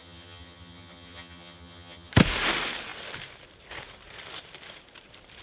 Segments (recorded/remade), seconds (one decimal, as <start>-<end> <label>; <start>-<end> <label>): 0.0-2.1 remade; 2.1-5.4 recorded

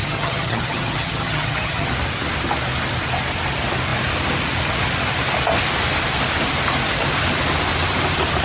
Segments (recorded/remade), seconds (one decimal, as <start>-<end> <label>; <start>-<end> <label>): 0.0-1.9 remade; 1.9-8.4 recorded

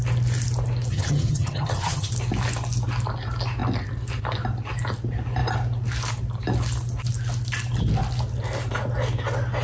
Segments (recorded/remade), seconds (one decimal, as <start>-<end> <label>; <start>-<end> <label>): 0.0-0.9 recorded; 0.9-2.1 remade; 2.1-9.6 recorded

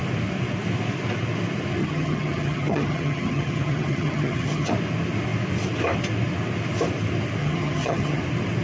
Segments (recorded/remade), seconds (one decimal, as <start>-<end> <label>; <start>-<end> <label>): 0.0-1.8 recorded; 1.8-4.7 remade; 4.7-7.4 recorded; 7.4-8.2 remade; 8.2-8.6 recorded

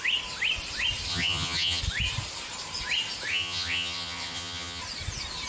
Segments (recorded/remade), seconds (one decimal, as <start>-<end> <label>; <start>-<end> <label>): 0.0-1.1 recorded; 1.1-1.8 remade; 1.8-3.3 recorded; 3.3-4.8 remade; 4.8-5.5 recorded

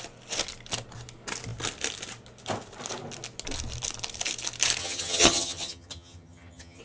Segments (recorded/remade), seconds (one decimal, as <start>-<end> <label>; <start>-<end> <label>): 0.0-4.8 recorded; 4.8-6.8 remade

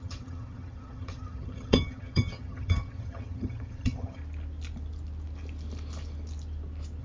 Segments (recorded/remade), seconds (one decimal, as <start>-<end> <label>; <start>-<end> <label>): 0.0-4.2 remade; 4.2-7.0 recorded

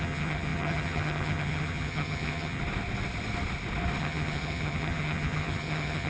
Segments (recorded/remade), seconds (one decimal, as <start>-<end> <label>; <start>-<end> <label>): 0.0-2.6 remade; 2.6-4.0 recorded; 4.0-6.1 remade